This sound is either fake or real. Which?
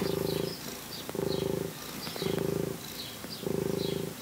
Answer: real